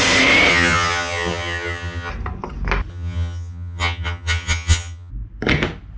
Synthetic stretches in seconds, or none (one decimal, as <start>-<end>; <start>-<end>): 0.5-2.1; 2.9-5.1

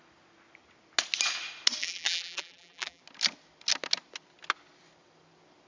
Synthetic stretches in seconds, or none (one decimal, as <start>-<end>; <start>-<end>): 1.8-3.0

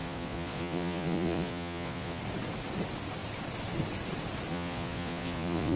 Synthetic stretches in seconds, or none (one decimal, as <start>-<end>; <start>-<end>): 0.0-2.2; 4.5-5.8

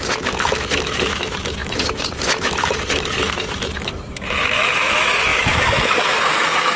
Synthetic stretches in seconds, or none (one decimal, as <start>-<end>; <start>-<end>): 0.0-6.8

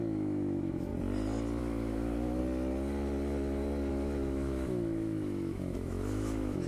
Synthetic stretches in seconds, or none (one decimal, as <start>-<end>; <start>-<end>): 0.0-0.9; 1.6-2.4; 3.9-6.7

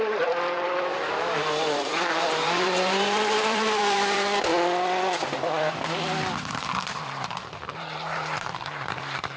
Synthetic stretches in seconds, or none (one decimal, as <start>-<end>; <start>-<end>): 0.0-4.5; 6.5-9.4

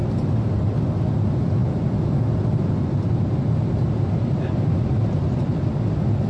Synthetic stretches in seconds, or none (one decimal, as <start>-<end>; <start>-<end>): none